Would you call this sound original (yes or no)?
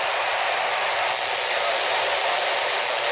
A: yes